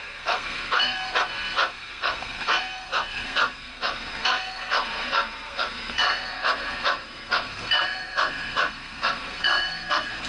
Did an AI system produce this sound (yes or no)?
yes